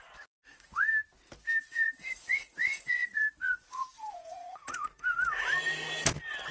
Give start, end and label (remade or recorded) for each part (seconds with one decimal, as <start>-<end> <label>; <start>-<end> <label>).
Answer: 0.0-0.9 remade; 0.9-1.6 recorded; 1.6-5.5 remade; 5.5-6.5 recorded